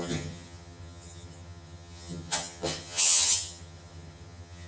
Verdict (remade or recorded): remade